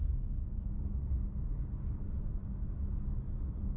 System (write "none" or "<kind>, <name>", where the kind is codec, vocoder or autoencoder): none